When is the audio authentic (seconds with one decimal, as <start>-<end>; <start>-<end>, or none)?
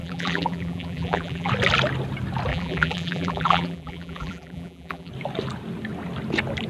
1.5-2.5; 5.1-6.7